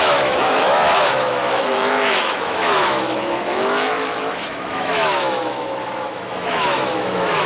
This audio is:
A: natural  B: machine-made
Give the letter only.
B